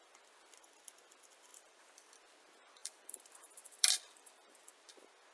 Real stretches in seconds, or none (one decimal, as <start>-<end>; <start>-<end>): 0.0-1.5; 2.1-2.8; 4.7-5.3